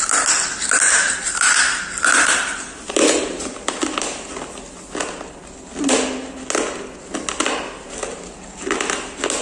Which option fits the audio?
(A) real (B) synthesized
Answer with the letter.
A